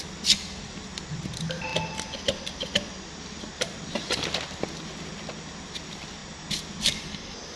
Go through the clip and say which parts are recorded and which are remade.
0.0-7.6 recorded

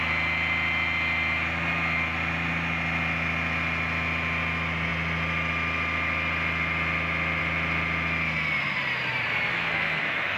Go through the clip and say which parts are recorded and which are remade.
0.0-9.5 recorded; 9.5-10.4 remade

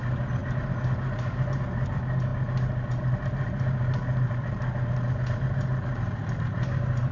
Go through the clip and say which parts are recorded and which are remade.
0.0-7.1 recorded

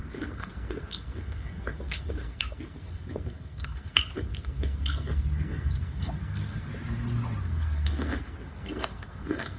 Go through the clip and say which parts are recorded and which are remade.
0.0-6.7 remade; 6.7-7.4 recorded; 7.4-9.6 remade

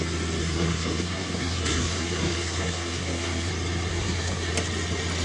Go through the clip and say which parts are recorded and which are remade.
0.0-0.4 recorded; 0.4-3.5 remade; 3.5-3.9 recorded; 3.9-4.5 remade; 4.5-5.2 recorded

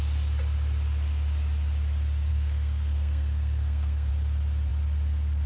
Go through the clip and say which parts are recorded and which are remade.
0.0-2.3 recorded; 2.3-4.1 remade; 4.1-5.5 recorded

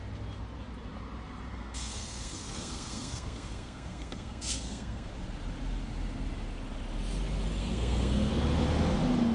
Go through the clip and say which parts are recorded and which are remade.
0.0-1.5 recorded; 1.5-5.1 remade; 5.1-7.6 recorded; 7.6-8.3 remade; 8.3-9.3 recorded

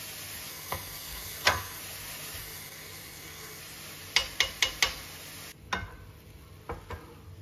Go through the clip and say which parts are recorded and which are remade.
0.0-0.5 recorded; 0.5-1.8 remade; 1.8-2.4 recorded; 2.4-3.6 remade; 3.6-7.4 recorded